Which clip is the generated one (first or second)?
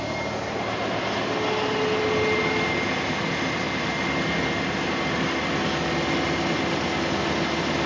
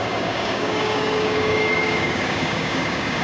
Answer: second